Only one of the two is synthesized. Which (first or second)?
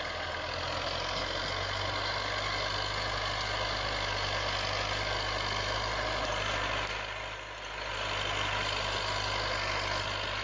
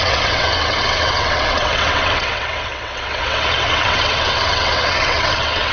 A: second